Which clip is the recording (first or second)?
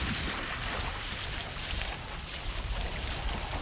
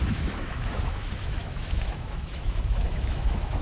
first